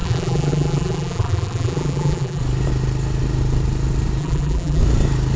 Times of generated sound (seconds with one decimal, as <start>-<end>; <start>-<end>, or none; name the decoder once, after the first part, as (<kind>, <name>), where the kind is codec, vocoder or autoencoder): 0.0-2.4 (vocoder, BigVGAN v2); 4.2-4.8